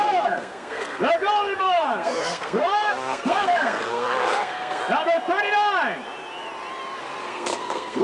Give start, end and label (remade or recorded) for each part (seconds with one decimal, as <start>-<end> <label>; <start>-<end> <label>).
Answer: 0.0-1.0 remade; 1.0-1.6 recorded; 1.6-4.8 remade; 4.8-7.2 recorded; 7.2-8.0 remade